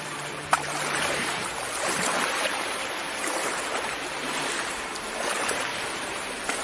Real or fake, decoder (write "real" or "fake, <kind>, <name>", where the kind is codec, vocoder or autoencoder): fake, vocoder, BigVGAN v2